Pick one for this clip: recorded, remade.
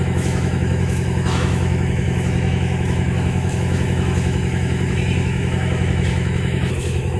remade